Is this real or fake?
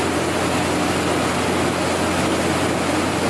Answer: real